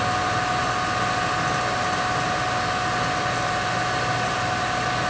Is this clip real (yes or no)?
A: yes